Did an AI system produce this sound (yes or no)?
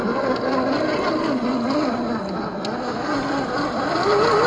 no